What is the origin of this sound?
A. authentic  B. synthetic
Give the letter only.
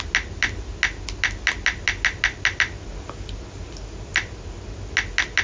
A